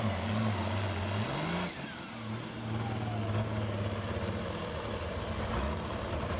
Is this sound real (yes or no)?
yes